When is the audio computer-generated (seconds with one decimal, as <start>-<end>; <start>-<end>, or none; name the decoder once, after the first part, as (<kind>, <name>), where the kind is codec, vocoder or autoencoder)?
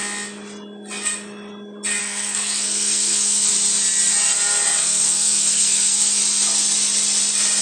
2.0-3.5 (codec, SNAC); 4.8-6.2